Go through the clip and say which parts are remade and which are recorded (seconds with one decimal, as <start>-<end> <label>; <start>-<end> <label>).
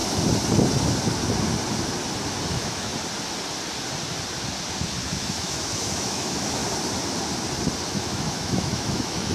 0.0-2.5 recorded; 2.5-2.9 remade; 2.9-5.0 recorded; 5.0-6.6 remade; 6.6-7.9 recorded; 7.9-9.3 remade